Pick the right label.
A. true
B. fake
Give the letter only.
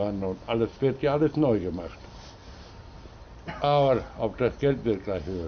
A